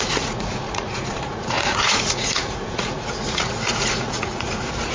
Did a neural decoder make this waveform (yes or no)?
yes